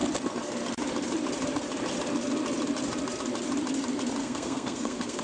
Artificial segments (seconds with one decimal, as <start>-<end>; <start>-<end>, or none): 4.2-5.2